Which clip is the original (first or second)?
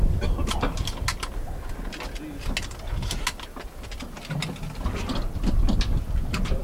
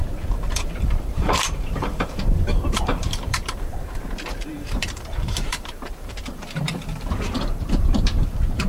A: first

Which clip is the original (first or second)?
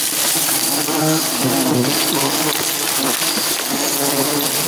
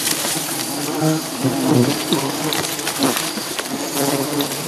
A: first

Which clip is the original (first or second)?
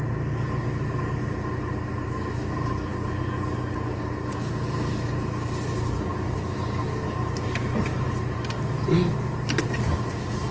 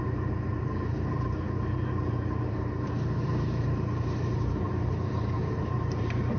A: first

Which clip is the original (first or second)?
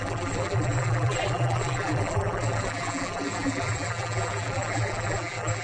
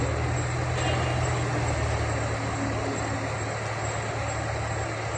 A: second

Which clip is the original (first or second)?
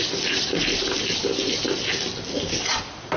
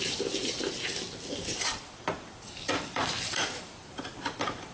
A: first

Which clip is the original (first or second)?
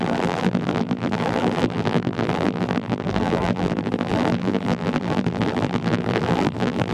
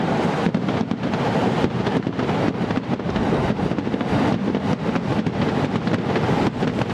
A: second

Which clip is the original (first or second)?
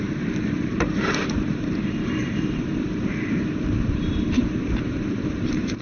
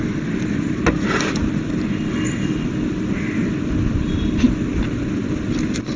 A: second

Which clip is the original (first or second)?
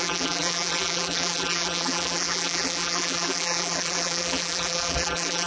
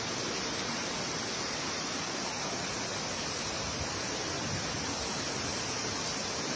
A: second